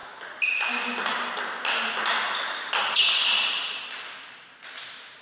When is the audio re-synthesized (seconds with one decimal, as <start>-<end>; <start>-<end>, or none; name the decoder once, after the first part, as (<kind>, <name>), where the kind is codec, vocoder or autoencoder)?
none

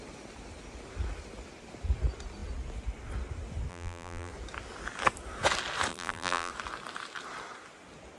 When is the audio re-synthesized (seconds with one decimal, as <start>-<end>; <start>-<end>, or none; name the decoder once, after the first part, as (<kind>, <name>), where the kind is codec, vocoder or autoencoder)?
3.7-4.3 (vocoder, BigVGAN v2); 5.9-6.5

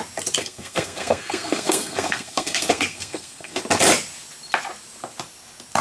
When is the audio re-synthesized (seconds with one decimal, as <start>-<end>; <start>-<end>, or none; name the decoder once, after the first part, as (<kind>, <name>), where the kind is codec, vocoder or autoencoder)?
0.4-3.6 (codec, SNAC)

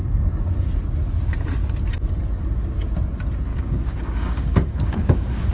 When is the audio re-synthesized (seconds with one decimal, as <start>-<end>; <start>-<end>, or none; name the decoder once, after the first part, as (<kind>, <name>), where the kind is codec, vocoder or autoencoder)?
3.5-5.5 (codec, DAC)

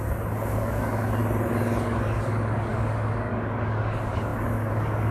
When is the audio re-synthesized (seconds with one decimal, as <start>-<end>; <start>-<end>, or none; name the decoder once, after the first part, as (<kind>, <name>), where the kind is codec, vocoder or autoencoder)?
0.0-1.2 (codec, DAC); 1.8-5.1

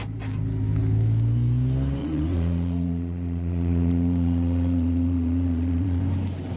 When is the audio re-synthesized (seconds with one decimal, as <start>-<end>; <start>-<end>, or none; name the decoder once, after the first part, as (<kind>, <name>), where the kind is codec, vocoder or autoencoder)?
2.0-6.0 (vocoder, Vocos)